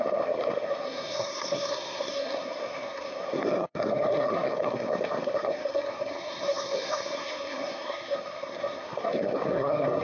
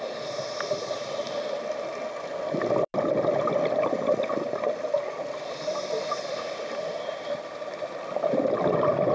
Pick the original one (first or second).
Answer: second